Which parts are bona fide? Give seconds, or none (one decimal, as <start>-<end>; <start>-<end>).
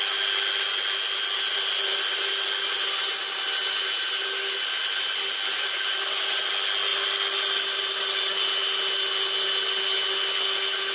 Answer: 0.0-10.9